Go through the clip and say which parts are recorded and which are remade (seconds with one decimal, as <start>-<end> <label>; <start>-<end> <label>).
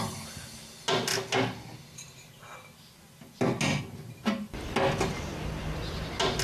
0.0-6.4 recorded